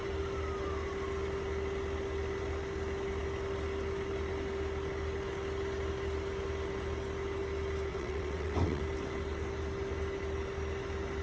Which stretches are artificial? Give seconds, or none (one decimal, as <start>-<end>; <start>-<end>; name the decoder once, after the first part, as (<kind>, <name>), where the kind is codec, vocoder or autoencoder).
7.9-8.8 (vocoder, WaveNeXt)